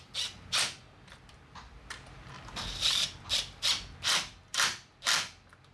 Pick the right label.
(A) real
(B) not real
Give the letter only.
B